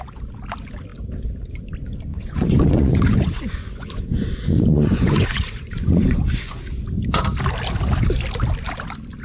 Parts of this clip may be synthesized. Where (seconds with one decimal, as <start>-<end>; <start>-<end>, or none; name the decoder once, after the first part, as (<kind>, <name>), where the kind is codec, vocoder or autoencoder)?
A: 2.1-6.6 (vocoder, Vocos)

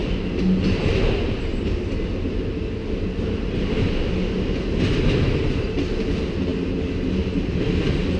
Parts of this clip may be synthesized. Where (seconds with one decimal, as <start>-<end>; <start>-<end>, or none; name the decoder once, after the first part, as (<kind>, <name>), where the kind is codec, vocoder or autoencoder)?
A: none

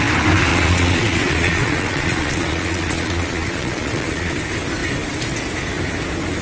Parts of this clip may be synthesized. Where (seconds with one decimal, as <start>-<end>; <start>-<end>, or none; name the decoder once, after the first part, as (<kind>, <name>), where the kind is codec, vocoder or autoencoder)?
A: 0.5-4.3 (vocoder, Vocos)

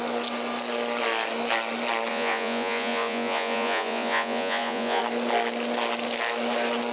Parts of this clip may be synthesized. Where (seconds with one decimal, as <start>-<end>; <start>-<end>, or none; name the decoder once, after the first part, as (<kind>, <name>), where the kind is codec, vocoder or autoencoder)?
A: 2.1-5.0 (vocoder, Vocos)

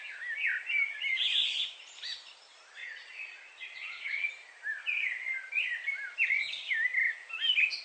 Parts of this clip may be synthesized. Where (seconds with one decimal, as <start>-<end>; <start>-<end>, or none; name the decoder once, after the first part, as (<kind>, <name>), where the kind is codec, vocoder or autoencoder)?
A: 2.8-4.3 (vocoder, Vocos)